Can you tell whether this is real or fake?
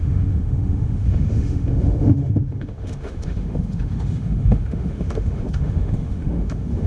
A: fake